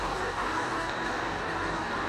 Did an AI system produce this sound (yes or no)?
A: yes